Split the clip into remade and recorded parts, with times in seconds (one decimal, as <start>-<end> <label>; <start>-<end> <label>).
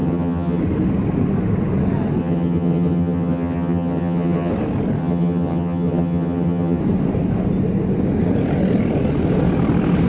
0.0-0.6 remade; 0.6-2.2 recorded; 2.2-4.5 remade; 4.5-5.0 recorded; 5.0-6.8 remade; 6.8-10.1 recorded